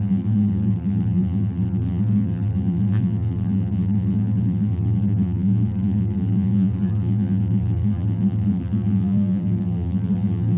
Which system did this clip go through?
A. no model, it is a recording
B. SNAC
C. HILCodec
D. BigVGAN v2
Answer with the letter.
D